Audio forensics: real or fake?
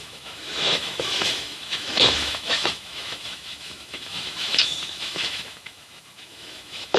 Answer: fake